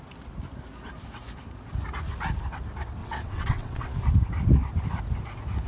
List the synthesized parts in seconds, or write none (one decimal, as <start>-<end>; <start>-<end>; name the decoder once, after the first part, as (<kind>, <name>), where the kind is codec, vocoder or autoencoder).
3.0-3.9 (vocoder, WaveNeXt)